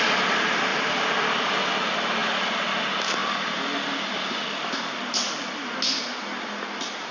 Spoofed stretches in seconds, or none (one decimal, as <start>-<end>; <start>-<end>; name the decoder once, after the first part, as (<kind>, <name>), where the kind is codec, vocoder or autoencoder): 0.7-1.7 (vocoder, BigVGAN v2); 2.2-2.8; 3.2-5.5

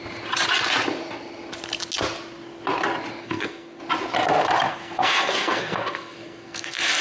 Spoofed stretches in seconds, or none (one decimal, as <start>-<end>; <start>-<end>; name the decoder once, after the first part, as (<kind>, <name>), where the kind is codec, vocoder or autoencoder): 3.2-3.8 (codec, SNAC); 4.7-7.0

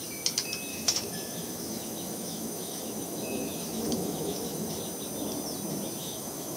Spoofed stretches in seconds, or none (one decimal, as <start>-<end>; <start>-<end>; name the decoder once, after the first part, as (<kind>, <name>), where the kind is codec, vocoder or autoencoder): 0.7-4.7 (autoencoder, DAC-VAE); 6.0-6.6

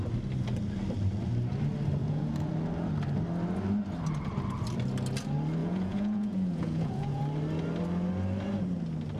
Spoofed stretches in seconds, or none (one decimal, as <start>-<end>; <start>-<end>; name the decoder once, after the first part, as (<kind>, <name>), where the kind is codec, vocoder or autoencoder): 2.0-2.5 (vocoder, Vocos); 5.6-7.2

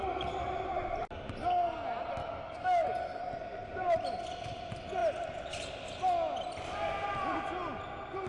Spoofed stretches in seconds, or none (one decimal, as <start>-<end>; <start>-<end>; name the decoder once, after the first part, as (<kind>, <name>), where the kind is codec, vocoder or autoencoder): 2.2-3.2 (codec, DAC)